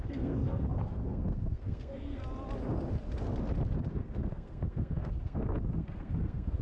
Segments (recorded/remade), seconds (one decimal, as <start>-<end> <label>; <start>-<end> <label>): 0.0-2.2 remade; 2.2-3.9 recorded; 3.9-6.6 remade

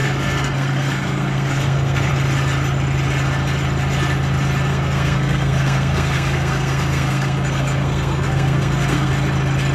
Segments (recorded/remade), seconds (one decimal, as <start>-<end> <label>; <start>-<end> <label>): 0.0-2.1 remade; 2.1-4.7 recorded; 4.7-9.1 remade; 9.1-9.7 recorded